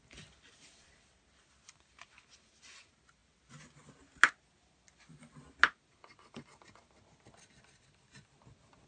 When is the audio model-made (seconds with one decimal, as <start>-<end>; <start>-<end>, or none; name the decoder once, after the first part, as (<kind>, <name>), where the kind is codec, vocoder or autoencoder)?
none